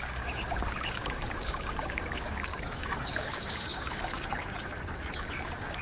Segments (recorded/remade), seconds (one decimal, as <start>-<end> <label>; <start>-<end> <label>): 0.0-5.8 remade